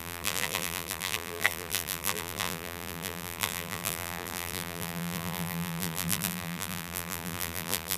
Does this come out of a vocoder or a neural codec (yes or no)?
yes